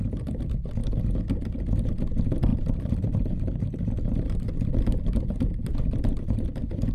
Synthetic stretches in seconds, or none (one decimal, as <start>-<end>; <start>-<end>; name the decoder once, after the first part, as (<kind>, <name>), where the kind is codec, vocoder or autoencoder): 2.5-6.4 (vocoder, BigVGAN v2)